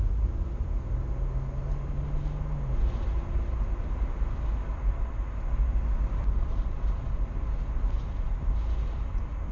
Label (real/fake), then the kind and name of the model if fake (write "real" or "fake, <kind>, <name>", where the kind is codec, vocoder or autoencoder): real